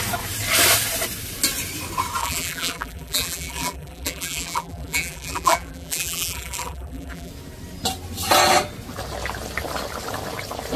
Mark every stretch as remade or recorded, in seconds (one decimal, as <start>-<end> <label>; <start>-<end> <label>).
0.0-2.2 recorded; 2.2-7.3 remade; 7.3-10.8 recorded